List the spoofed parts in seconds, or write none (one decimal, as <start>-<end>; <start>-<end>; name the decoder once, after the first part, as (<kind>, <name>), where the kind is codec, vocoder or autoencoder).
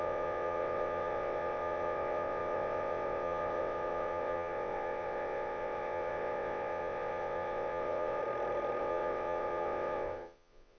0.0-8.2 (vocoder, WaveNeXt); 8.8-10.8